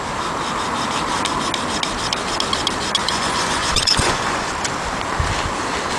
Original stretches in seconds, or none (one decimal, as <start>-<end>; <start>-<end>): 0.0-3.0; 4.5-6.0